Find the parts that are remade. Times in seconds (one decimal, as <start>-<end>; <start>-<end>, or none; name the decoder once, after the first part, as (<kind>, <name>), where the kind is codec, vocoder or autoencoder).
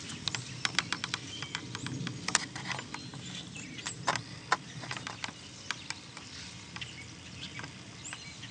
none